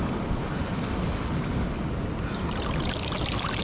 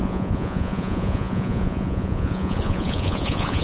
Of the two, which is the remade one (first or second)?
second